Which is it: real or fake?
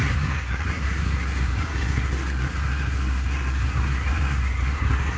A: fake